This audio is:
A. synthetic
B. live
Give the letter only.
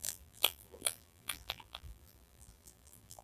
A